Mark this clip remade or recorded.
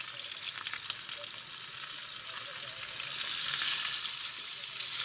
recorded